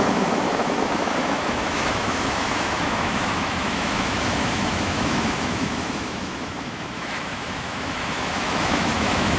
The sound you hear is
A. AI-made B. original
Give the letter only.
A